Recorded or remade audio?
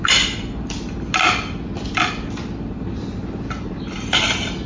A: recorded